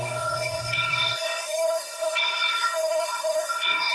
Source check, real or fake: fake